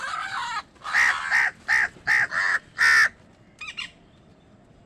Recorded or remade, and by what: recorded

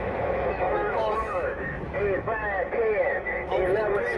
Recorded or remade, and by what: remade, autoencoder, DAC-VAE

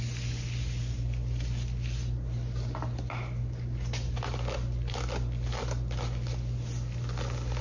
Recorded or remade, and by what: recorded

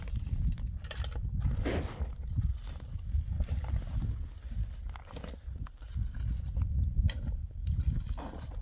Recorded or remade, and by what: recorded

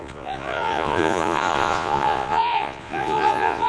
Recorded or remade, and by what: remade, vocoder, Vocos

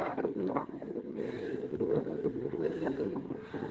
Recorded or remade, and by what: remade, codec, SNAC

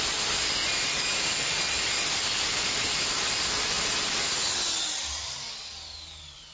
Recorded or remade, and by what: recorded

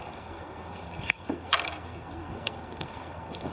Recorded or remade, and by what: remade, codec, SNAC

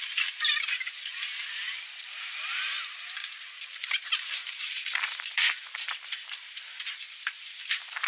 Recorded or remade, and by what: remade, vocoder, BigVGAN v2